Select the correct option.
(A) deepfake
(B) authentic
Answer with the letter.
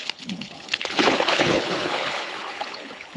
A